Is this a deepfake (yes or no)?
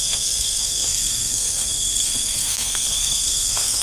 yes